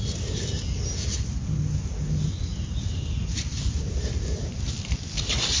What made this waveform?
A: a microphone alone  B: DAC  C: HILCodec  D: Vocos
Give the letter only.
A